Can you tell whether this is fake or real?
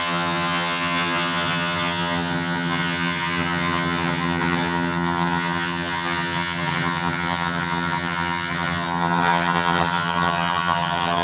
fake